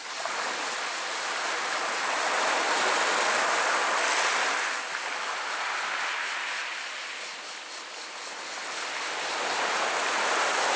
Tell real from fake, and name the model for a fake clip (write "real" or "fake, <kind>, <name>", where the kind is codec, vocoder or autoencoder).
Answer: real